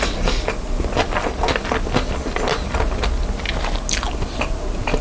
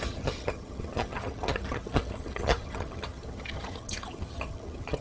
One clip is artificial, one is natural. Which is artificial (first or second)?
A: second